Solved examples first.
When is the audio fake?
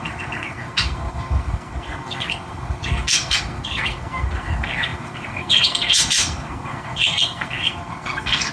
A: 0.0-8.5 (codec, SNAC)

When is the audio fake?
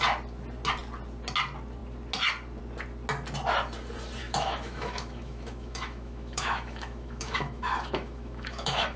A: 4.2-9.0 (autoencoder, DAC-VAE)